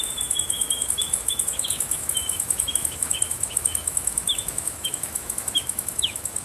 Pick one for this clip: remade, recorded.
remade